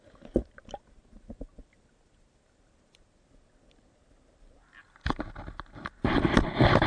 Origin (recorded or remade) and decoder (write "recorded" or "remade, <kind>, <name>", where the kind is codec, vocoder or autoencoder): recorded